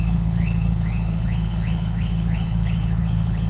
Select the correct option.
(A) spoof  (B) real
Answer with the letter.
A